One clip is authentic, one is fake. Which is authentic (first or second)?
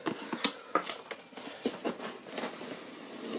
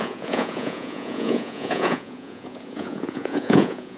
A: first